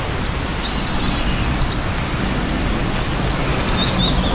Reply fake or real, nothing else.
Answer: real